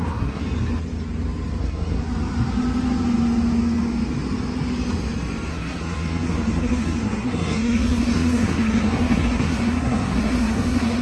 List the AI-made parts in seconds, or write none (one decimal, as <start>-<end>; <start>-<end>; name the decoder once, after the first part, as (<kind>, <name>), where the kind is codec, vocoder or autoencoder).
0.0-0.4 (codec, SNAC); 1.6-2.0; 5.5-11.0